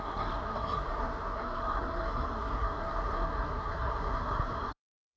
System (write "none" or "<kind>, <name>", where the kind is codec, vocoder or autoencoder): codec, SNAC